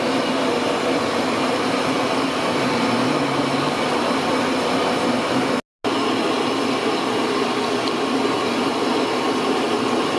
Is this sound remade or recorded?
recorded